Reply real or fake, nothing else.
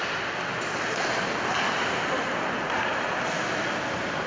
real